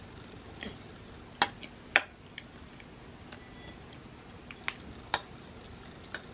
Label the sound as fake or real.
real